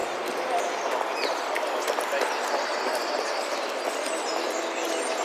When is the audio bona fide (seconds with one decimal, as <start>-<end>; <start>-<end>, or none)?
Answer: 0.0-5.2